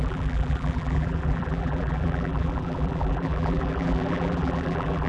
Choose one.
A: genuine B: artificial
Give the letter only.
B